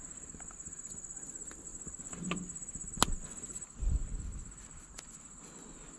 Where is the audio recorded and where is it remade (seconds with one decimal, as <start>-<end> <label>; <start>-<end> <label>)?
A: 0.0-6.0 recorded